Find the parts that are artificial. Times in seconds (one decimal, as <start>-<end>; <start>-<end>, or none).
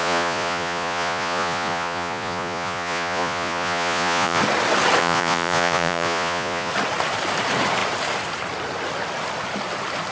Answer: 0.0-4.4; 5.0-6.7